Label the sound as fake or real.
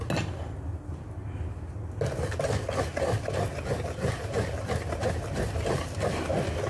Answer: real